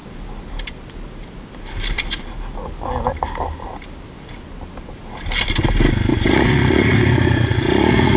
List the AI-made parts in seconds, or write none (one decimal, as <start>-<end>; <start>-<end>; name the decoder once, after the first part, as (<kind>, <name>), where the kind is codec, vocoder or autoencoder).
6.1-8.2 (vocoder, Vocos)